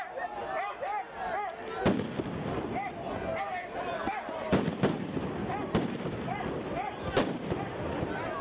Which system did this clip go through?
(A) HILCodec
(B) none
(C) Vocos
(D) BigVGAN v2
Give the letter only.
B